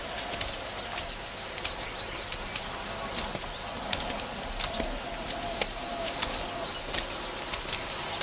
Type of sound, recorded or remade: recorded